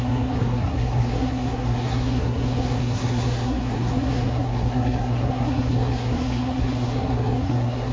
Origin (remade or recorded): remade